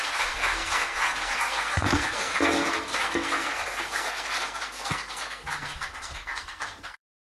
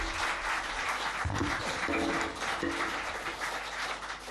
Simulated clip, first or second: first